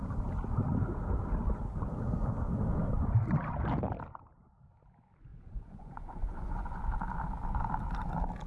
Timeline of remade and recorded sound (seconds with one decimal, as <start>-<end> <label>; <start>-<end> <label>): 0.0-5.3 recorded; 5.3-6.8 remade; 6.8-8.5 recorded